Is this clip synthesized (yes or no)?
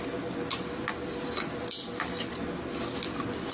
no